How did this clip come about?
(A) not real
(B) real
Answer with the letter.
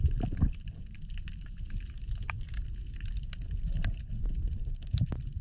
B